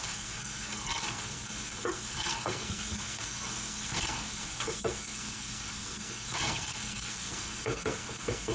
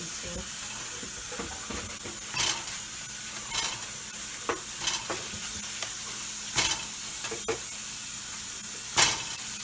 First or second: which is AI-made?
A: first